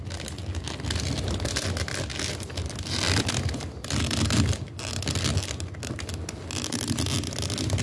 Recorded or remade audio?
recorded